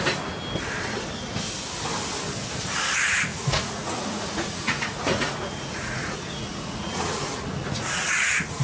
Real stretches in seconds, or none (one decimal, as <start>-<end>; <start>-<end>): 0.0-3.3